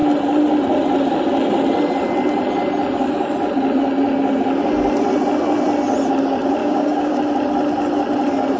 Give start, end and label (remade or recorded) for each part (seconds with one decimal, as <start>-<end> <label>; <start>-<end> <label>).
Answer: 0.0-6.6 recorded; 6.6-7.2 remade; 7.2-8.6 recorded